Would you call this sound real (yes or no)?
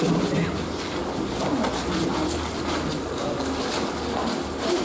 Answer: yes